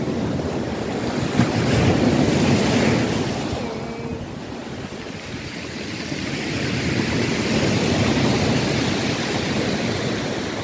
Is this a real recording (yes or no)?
yes